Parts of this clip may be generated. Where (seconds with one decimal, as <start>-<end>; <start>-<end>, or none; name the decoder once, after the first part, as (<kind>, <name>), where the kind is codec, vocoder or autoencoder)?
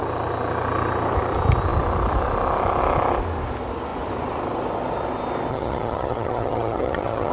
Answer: 5.5-7.3 (vocoder, HiFi-GAN)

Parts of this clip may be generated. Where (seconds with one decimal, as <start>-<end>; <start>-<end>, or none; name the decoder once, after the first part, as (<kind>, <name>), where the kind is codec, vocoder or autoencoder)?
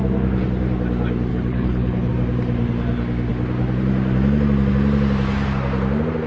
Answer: 1.3-2.1 (codec, HILCodec)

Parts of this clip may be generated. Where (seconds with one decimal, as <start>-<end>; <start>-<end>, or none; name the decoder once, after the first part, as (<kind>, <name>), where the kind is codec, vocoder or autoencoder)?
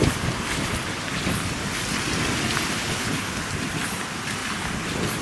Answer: 2.8-3.4 (codec, HILCodec)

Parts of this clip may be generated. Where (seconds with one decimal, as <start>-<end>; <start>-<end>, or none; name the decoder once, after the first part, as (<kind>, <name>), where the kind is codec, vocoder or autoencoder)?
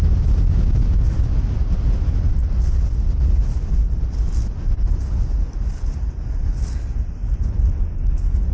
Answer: none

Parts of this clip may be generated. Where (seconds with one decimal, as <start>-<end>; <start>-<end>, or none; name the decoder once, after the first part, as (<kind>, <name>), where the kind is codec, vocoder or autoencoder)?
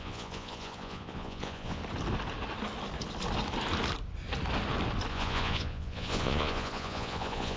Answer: 0.0-1.8 (vocoder, Vocos); 5.1-7.6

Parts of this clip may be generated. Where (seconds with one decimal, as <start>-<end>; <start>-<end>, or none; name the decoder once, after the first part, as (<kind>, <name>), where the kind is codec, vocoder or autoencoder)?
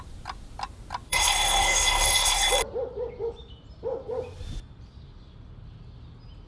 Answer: 1.1-2.5 (codec, SNAC)